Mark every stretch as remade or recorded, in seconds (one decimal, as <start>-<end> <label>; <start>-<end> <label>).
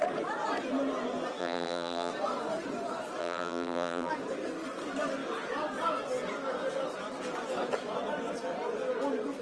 0.0-1.4 recorded; 1.4-2.1 remade; 2.1-3.2 recorded; 3.2-4.1 remade; 4.1-9.4 recorded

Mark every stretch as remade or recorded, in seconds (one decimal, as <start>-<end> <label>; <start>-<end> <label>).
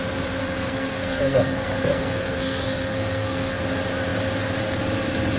0.0-0.4 recorded; 0.4-3.6 remade; 3.6-5.4 recorded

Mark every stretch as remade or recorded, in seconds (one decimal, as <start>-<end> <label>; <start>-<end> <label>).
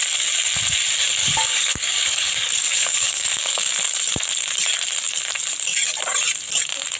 0.0-1.2 recorded; 1.2-3.7 remade; 3.7-7.0 recorded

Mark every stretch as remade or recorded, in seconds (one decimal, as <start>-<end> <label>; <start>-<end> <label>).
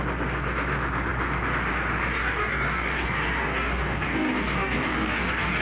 0.0-2.1 recorded; 2.1-5.6 remade